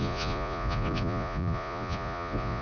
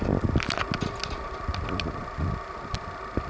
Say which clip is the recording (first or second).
second